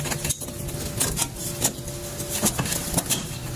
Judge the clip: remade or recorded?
recorded